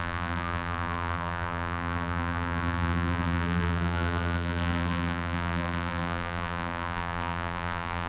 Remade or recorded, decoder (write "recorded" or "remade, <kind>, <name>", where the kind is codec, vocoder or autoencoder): remade, vocoder, BigVGAN v2